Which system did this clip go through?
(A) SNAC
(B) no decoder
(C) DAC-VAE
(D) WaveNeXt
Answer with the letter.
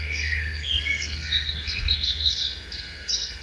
A